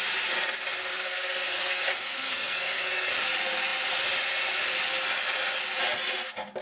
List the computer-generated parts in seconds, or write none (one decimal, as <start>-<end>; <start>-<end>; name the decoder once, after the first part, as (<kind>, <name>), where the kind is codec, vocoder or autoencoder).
0.9-3.1 (codec, SNAC)